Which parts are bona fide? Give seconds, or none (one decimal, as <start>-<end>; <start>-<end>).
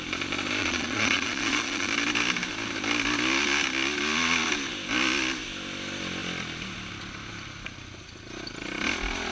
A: 0.0-0.6; 1.9-9.3